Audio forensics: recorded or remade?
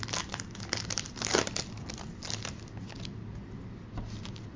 recorded